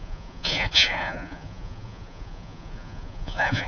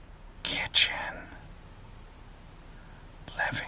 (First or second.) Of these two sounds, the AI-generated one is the first